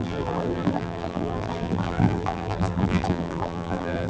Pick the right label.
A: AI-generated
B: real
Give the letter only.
A